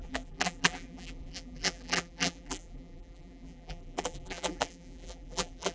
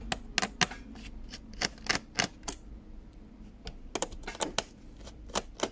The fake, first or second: first